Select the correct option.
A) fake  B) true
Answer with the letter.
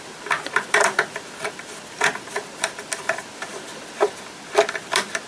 B